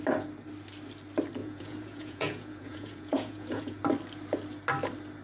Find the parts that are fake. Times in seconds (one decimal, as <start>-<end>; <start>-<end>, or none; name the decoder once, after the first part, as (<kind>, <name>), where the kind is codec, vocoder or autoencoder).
1.4-3.8 (vocoder, Vocos)